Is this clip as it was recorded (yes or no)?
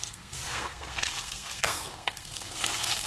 no